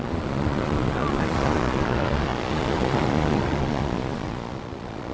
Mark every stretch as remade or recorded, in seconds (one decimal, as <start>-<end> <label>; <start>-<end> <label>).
0.0-5.1 remade